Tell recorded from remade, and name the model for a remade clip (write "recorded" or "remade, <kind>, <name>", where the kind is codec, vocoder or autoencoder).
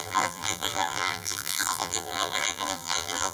remade, vocoder, BigVGAN v2